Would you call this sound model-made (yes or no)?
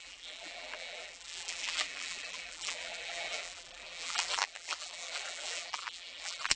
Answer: yes